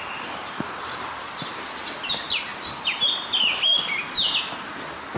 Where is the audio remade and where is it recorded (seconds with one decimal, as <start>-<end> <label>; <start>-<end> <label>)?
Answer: 0.0-5.2 recorded